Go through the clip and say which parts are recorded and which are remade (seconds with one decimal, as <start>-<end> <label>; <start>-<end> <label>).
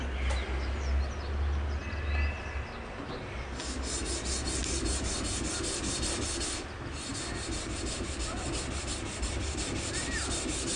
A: 0.0-10.8 recorded